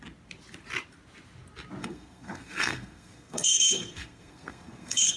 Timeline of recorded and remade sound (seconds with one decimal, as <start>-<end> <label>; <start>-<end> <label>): 0.0-1.8 recorded; 1.8-5.2 remade